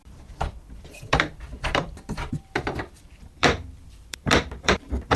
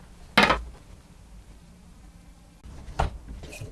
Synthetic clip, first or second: first